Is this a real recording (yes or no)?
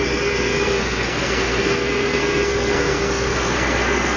no